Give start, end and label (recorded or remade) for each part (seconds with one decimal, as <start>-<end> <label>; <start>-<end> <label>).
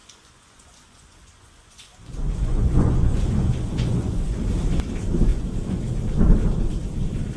0.0-4.4 remade; 4.4-5.3 recorded; 5.3-5.8 remade; 5.8-7.4 recorded